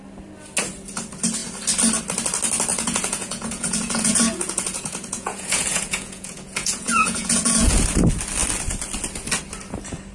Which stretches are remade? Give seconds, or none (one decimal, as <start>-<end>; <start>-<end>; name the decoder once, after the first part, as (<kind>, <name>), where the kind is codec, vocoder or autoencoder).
2.7-7.8 (vocoder, Vocos)